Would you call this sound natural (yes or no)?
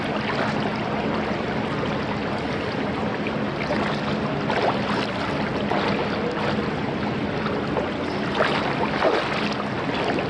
yes